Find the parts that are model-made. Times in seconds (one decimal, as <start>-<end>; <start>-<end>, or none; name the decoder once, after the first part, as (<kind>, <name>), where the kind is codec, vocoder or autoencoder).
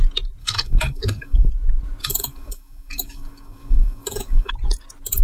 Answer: 0.4-1.5 (codec, DAC); 2.0-4.5